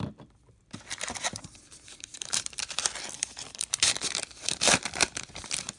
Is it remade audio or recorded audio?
remade